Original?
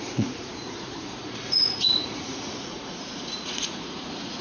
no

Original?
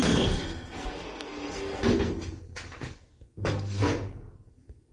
no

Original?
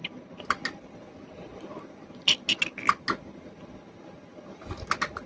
yes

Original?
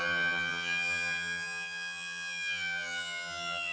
no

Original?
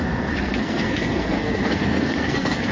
no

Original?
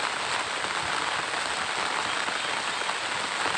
yes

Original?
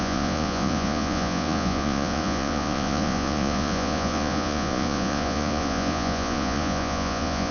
no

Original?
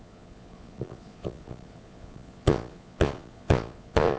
no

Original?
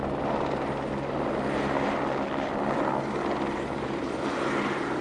yes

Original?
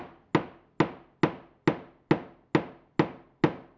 yes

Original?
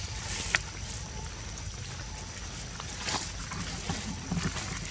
yes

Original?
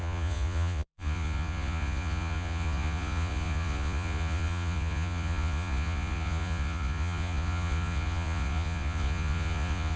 no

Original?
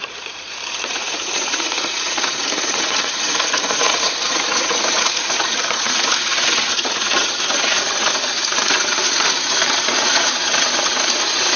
no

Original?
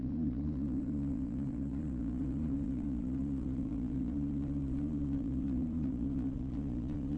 no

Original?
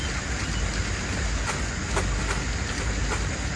yes